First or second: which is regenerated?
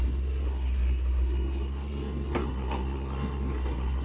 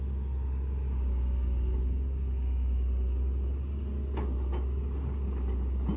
first